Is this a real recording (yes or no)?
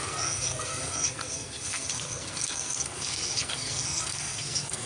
no